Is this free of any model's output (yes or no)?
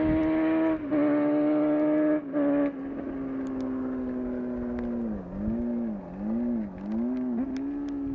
yes